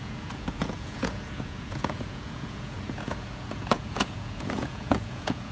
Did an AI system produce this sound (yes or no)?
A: yes